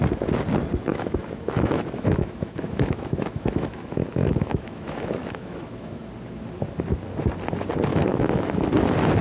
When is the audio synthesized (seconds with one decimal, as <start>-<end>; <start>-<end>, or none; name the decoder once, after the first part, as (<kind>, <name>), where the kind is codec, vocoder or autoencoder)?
0.9-6.0 (autoencoder, DAC-VAE); 7.9-8.6